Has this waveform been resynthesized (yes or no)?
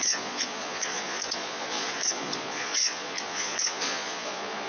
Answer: yes